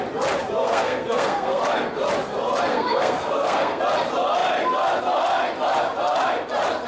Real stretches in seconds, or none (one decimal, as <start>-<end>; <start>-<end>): 0.0-0.6; 1.6-2.7; 3.8-6.9